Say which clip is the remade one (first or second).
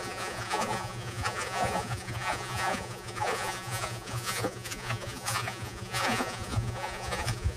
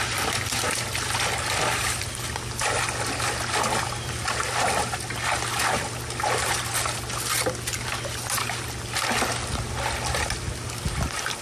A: first